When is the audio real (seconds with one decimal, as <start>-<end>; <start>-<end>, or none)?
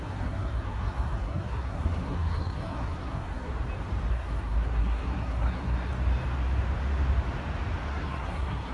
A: 3.5-4.1; 5.9-7.9